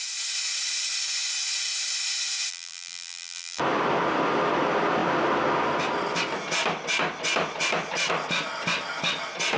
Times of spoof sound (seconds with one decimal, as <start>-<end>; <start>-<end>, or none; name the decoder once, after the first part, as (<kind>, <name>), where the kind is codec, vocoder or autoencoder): 2.5-3.6 (vocoder, BigVGAN v2)